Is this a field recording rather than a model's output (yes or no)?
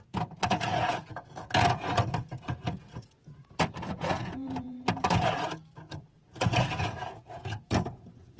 no